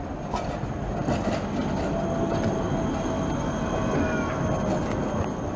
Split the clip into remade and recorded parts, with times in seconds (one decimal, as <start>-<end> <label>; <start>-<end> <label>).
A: 0.0-5.6 recorded